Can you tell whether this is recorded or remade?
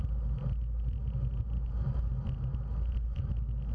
recorded